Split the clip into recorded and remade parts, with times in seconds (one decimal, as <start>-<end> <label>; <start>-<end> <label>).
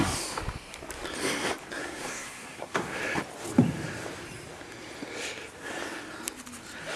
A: 0.0-1.8 recorded; 1.8-3.0 remade; 3.0-7.0 recorded